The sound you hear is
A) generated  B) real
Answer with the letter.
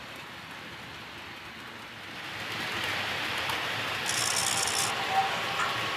B